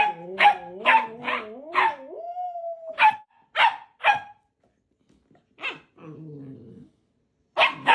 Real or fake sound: real